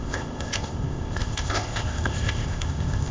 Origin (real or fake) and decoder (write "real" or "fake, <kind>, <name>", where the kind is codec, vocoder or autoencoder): fake, codec, ZipCodec